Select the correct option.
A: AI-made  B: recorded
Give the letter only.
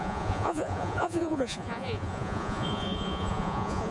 A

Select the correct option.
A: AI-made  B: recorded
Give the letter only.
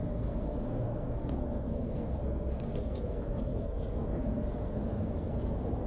A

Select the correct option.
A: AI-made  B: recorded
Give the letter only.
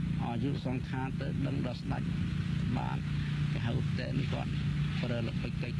B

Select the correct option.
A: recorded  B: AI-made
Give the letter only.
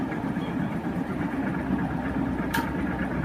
B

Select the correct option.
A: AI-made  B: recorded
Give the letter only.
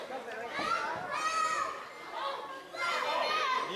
B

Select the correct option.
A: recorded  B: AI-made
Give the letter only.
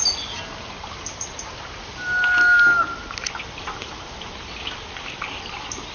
A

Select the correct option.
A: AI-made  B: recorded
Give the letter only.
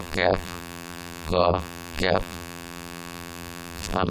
A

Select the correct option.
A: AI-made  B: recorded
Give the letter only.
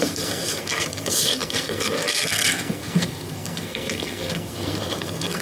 A